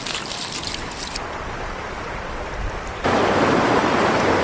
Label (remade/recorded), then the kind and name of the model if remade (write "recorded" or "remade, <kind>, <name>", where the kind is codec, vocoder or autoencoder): remade, vocoder, BigVGAN v2